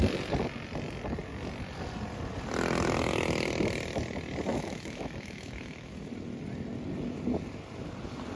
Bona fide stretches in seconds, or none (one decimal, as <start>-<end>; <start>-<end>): 0.0-4.5; 5.9-8.4